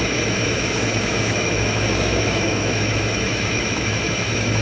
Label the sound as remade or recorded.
remade